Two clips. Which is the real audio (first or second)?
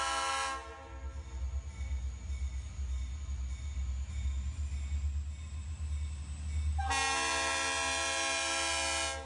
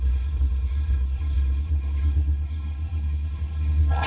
first